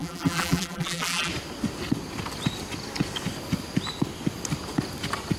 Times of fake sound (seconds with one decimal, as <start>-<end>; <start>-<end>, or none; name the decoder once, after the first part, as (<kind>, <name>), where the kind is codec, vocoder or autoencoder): 0.0-1.3 (vocoder, BigVGAN v2)